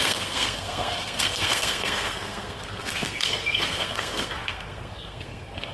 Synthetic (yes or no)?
yes